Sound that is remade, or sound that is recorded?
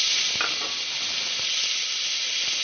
recorded